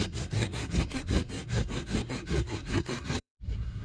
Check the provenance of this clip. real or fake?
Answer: fake